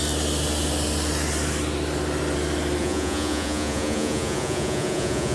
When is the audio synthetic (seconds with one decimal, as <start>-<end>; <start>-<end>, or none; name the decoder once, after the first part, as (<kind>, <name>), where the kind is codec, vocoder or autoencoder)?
2.8-5.3 (vocoder, Vocos)